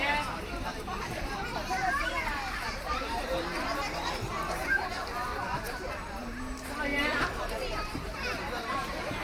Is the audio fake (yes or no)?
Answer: yes